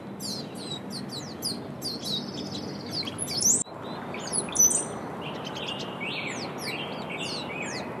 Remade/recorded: recorded